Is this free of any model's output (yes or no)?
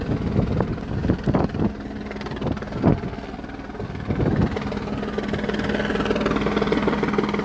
yes